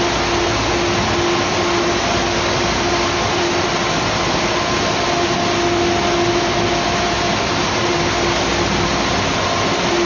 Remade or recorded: recorded